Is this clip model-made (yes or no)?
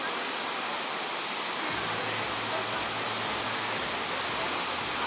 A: no